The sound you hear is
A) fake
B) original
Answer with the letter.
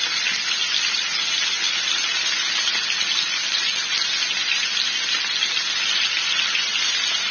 B